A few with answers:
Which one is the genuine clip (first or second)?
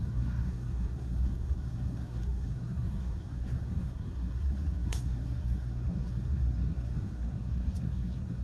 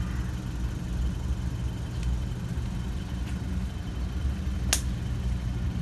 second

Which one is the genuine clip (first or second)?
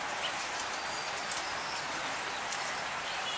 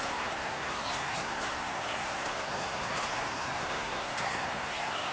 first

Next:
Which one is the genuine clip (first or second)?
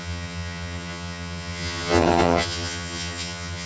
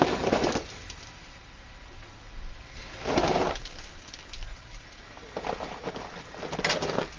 second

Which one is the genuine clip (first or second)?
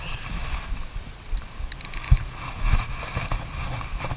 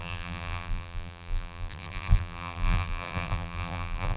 first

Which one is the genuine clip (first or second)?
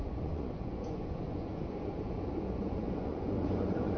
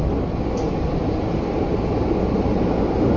second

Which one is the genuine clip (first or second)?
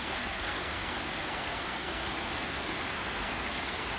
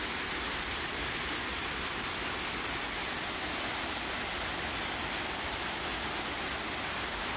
second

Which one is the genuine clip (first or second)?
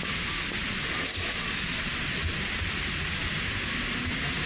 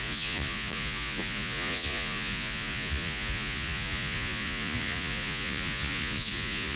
first